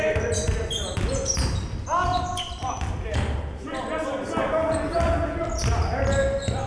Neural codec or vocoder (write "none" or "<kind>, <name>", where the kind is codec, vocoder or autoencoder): none